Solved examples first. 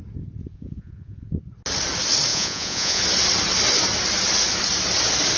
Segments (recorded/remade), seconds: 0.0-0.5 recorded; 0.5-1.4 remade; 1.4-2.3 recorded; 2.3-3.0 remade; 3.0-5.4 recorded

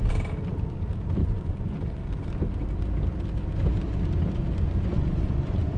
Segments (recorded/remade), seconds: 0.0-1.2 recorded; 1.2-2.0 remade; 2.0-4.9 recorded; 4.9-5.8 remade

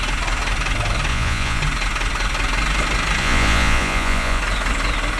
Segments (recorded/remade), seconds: 0.0-1.1 recorded; 1.1-1.6 remade; 1.6-3.2 recorded; 3.2-4.4 remade; 4.4-5.2 recorded

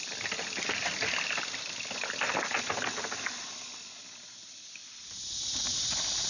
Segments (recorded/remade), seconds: 0.0-6.3 recorded

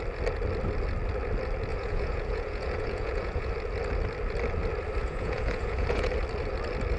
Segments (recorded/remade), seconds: 0.0-1.7 recorded; 1.7-3.5 remade; 3.5-5.0 recorded; 5.0-6.1 remade; 6.1-7.0 recorded

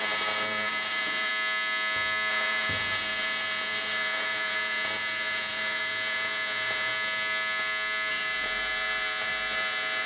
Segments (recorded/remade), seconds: 0.0-1.3 remade; 1.3-2.3 recorded; 2.3-6.9 remade; 6.9-8.1 recorded; 8.1-10.1 remade